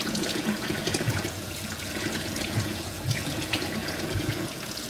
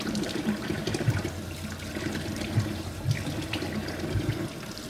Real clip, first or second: second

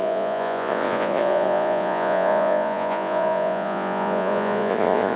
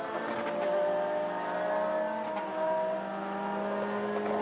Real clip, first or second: second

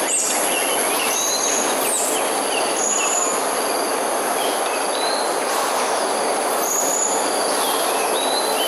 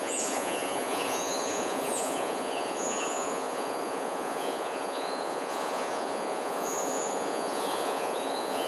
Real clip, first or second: first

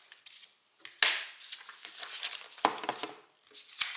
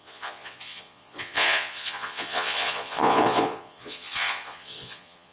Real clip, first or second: first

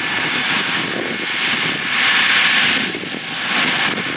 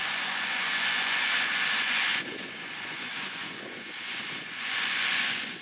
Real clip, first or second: first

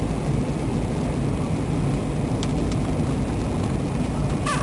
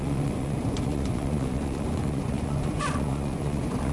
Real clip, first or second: first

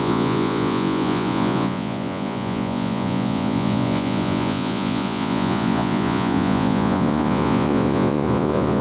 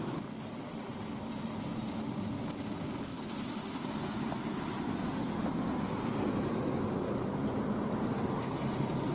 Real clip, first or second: second